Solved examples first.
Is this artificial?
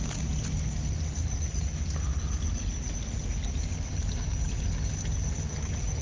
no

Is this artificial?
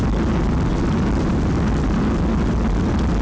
no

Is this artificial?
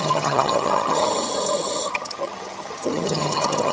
yes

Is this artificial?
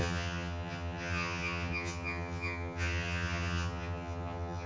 yes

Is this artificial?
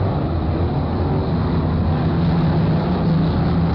no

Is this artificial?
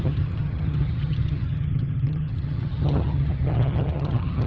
yes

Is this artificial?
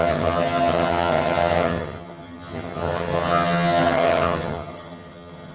yes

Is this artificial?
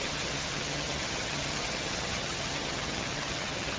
yes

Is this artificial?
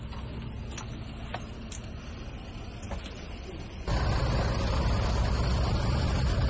no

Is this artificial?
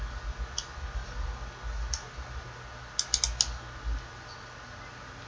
no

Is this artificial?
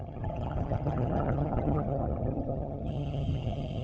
yes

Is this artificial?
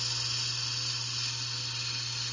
no